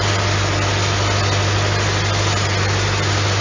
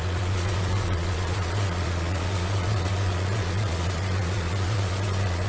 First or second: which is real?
first